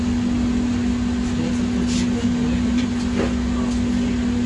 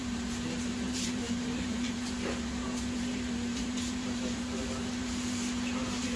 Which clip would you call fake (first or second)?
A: second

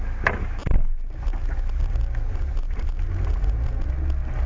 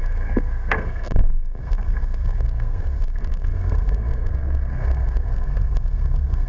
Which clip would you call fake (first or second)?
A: second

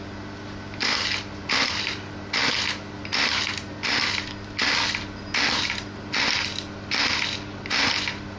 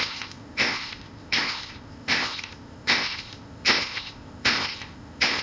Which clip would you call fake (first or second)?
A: second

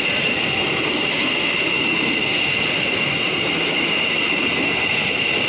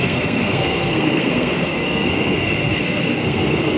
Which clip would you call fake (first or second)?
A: second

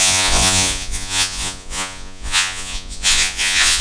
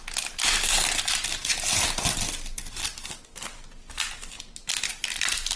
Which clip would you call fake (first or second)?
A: first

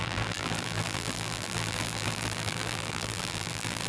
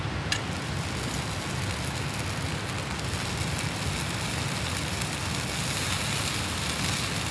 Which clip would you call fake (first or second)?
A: first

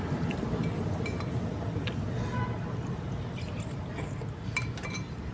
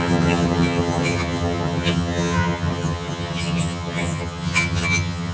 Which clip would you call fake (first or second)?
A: second